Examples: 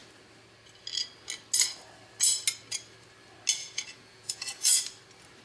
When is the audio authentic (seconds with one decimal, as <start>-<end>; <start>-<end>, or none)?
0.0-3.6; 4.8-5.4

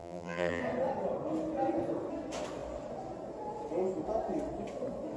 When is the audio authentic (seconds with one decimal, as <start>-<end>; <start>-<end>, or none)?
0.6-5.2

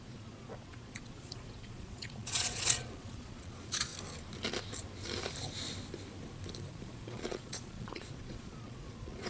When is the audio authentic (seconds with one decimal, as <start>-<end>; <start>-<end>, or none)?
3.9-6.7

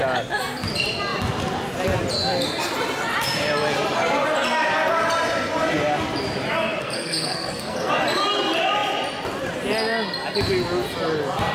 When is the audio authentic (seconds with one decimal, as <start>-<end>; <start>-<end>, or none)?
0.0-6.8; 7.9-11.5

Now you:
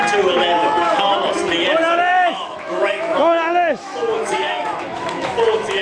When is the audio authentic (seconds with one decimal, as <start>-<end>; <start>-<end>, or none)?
0.0-0.6; 1.1-2.1